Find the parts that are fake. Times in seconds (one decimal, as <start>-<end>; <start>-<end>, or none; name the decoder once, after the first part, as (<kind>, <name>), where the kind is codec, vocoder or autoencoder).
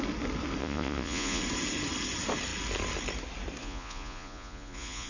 0.6-1.4 (vocoder, Vocos); 3.6-5.1